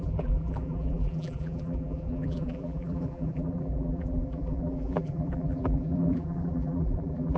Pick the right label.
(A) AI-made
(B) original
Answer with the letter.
A